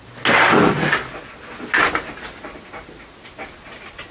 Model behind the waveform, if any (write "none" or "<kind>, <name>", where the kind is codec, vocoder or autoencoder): none